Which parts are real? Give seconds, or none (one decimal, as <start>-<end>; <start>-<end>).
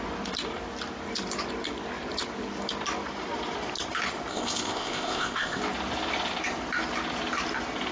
0.0-4.3; 5.6-7.9